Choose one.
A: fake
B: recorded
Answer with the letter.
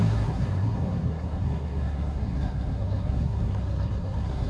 A